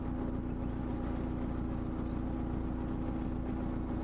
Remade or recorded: recorded